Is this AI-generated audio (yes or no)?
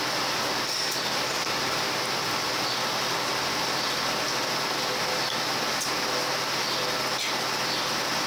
no